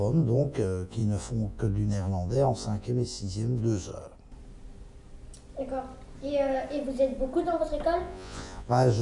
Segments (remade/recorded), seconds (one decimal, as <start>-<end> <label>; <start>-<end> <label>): 0.0-3.9 remade; 3.9-8.0 recorded; 8.0-9.0 remade